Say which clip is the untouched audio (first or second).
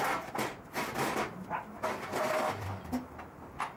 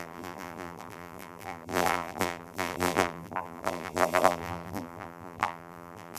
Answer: first